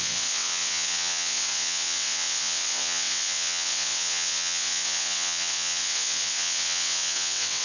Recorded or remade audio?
remade